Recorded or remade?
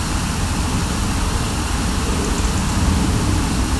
recorded